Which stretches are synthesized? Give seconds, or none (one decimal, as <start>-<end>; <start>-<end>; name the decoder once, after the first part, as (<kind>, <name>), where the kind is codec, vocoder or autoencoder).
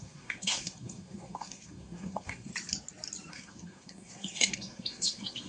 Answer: 0.0-2.5 (codec, SNAC); 3.3-5.5